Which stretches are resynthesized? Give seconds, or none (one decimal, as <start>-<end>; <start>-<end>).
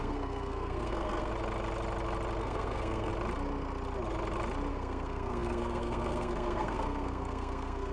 0.0-1.3; 2.4-3.1; 4.7-7.9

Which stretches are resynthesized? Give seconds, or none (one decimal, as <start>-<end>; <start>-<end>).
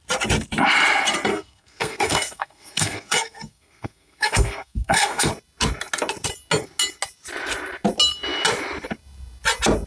1.3-5.3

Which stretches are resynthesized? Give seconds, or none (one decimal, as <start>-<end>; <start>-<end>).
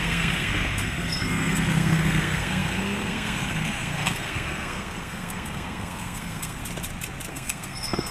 0.0-6.6; 7.3-8.1